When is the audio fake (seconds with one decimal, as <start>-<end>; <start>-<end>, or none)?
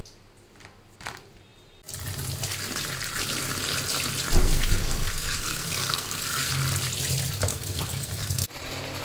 4.4-6.5; 7.5-8.5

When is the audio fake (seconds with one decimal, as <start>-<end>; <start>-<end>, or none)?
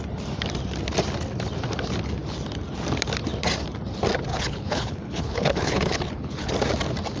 4.3-6.5